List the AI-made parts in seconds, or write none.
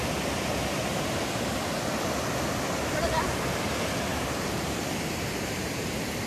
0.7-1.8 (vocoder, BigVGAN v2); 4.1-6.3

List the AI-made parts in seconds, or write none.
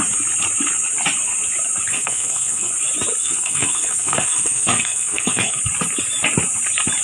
1.9-2.7 (codec, SNAC); 3.2-5.6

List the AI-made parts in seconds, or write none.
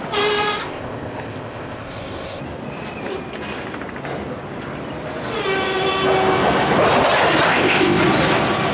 0.6-2.4 (codec, ZipCodec); 7.5-8.0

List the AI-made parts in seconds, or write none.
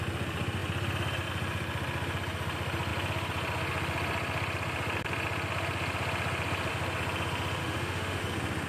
7.6-8.2 (autoencoder, DAC-VAE)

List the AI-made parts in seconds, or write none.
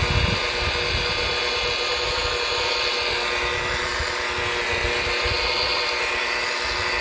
none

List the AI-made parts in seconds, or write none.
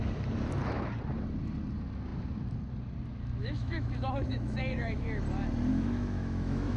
3.4-5.2 (autoencoder, DAC-VAE); 5.7-6.8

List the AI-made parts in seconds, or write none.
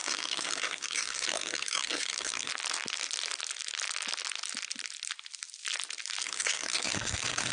0.0-2.5 (codec, SNAC); 6.2-7.5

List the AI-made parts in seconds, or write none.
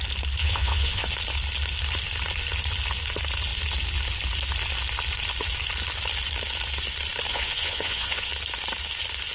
0.4-1.1 (vocoder, Vocos); 7.3-8.3